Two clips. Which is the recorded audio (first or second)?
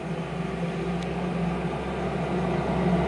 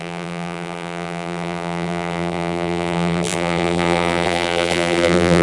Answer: first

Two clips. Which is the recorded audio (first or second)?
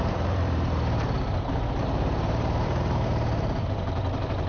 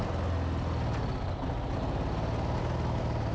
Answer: second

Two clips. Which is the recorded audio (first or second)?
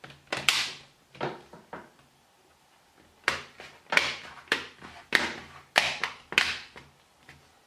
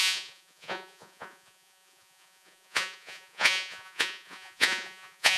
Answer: first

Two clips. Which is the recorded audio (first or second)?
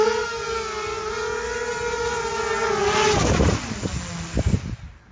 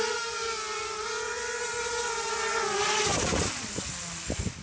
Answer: first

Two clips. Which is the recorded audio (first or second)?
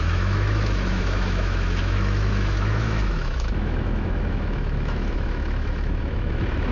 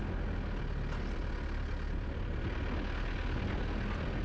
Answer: second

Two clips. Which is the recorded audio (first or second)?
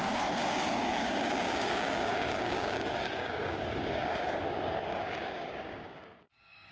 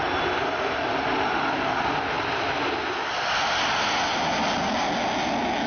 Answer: second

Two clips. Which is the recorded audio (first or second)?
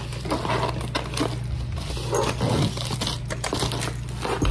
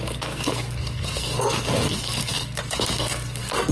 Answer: first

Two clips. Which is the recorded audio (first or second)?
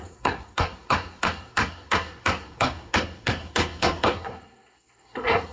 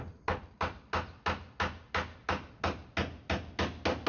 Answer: second